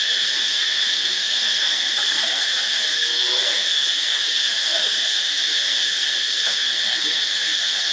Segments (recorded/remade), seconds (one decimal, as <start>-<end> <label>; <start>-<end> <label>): 0.0-7.9 remade